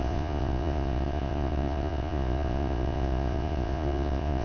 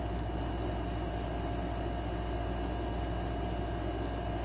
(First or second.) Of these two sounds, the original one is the second